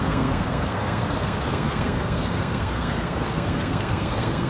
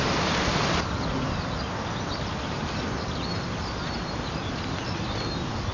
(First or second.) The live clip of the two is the second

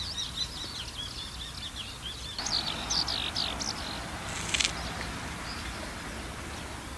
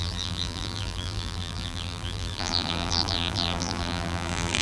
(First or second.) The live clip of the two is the first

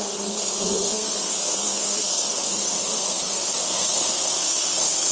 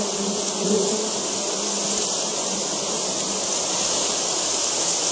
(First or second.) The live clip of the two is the second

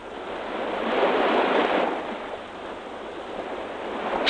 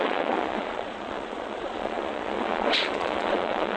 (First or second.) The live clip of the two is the first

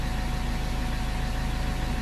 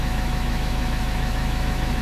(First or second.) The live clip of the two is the first